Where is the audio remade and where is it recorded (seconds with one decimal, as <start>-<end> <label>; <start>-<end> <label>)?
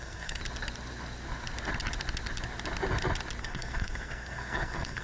0.0-0.4 remade; 0.4-3.4 recorded; 3.4-5.0 remade